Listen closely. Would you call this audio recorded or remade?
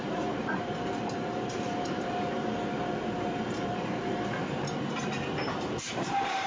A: remade